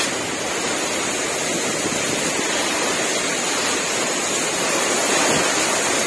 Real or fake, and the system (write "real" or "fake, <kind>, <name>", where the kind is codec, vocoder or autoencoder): real